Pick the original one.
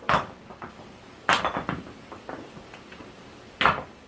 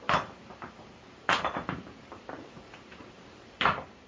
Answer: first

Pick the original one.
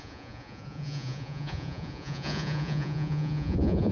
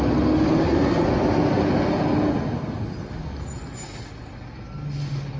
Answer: second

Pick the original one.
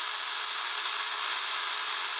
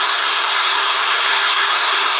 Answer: first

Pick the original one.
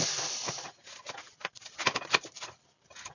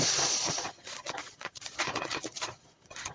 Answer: first